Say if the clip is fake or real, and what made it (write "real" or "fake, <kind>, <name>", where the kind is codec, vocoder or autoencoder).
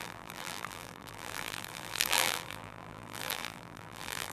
fake, vocoder, BigVGAN v2